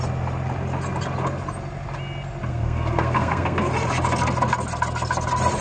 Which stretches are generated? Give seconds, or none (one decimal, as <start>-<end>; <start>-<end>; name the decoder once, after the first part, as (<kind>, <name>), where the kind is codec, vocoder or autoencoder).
2.5-3.7 (codec, SNAC)